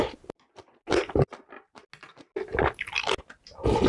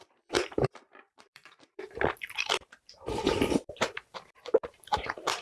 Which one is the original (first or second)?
first